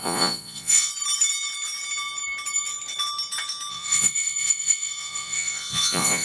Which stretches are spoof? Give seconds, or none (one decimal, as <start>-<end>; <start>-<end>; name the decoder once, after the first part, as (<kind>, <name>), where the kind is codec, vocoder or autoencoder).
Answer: 0.0-0.9 (vocoder, Vocos); 3.7-6.2

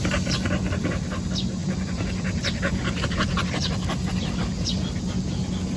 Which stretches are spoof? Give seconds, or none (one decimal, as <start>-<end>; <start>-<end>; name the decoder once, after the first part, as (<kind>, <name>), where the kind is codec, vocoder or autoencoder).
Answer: 1.6-5.1 (vocoder, BigVGAN v2)